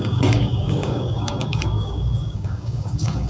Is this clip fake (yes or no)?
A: yes